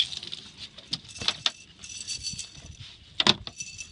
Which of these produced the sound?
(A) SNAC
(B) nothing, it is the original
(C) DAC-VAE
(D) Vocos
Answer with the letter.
B